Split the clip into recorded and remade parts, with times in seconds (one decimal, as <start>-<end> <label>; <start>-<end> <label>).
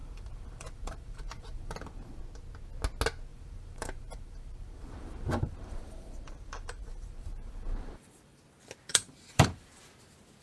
0.0-2.2 remade; 2.2-3.3 recorded; 3.3-8.4 remade; 8.4-8.9 recorded; 8.9-9.8 remade; 9.8-10.4 recorded